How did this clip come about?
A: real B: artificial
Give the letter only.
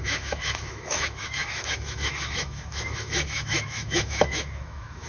B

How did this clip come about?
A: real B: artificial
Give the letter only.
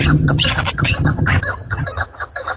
B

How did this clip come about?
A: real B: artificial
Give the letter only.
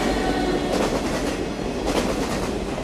A